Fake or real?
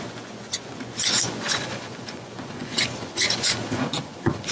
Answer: fake